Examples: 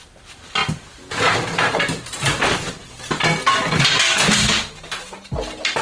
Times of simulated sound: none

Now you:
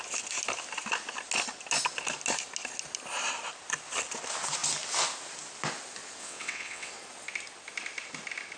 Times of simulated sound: 6.2-6.9 (vocoder, WaveNeXt)

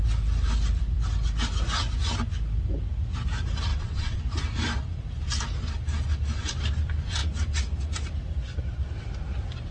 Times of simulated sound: 3.7-4.2 (vocoder, WaveNeXt)